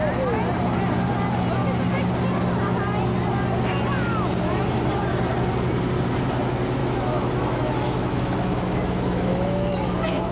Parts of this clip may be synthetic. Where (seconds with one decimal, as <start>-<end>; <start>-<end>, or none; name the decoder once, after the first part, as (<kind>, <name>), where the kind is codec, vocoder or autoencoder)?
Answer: 6.8-10.3 (autoencoder, DAC-VAE)